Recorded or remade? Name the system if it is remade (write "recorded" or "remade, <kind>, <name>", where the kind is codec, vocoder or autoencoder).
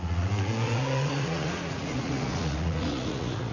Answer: remade, vocoder, Vocos